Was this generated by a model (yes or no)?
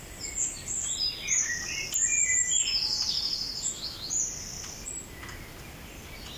no